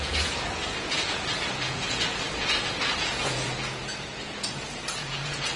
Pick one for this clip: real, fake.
fake